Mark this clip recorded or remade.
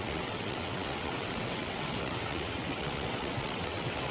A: remade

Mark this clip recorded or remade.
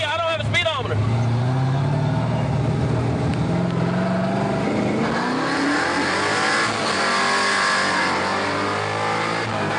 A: recorded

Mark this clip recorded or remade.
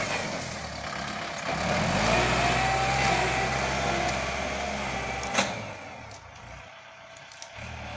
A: recorded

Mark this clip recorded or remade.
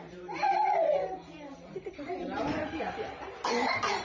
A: remade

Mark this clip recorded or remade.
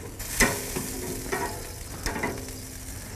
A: recorded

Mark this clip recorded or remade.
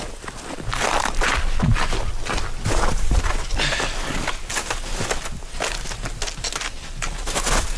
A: recorded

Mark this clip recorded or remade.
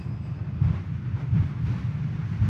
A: recorded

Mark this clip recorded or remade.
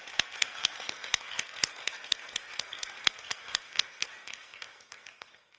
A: remade